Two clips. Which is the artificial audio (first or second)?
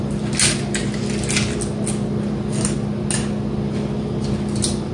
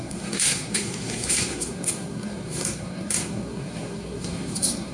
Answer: second